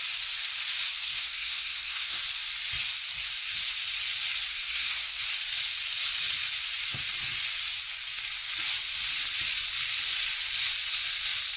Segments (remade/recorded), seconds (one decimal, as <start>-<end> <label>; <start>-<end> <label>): 0.0-1.0 recorded; 1.0-2.2 remade; 2.2-4.5 recorded; 4.5-5.2 remade; 5.2-11.6 recorded